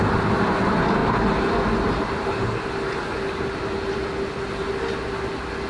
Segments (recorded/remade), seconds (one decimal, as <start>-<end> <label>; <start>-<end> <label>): 0.0-5.7 recorded